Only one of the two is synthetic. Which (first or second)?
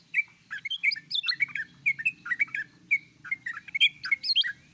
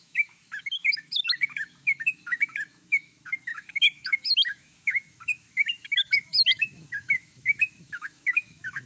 second